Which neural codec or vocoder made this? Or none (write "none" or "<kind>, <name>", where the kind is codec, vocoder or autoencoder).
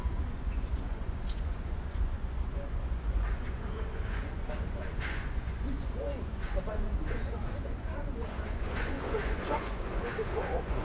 vocoder, Vocos